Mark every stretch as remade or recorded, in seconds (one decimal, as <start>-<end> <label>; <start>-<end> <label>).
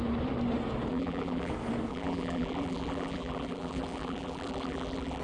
0.0-0.9 recorded; 0.9-1.5 remade; 1.5-1.9 recorded; 1.9-5.2 remade